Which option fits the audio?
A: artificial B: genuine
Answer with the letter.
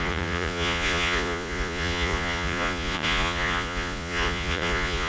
A